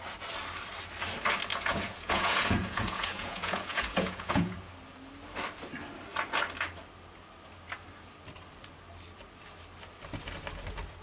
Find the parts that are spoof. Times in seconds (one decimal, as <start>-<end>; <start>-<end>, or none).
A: 1.5-4.7